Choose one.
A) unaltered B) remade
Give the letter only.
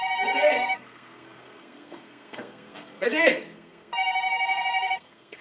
B